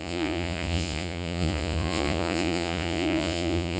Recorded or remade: remade